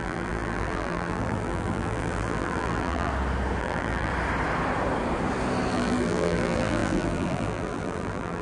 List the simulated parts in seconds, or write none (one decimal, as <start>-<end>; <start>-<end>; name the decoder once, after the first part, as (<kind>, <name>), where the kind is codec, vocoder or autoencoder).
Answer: 0.0-3.1 (vocoder, BigVGAN v2); 3.6-4.1; 5.7-8.4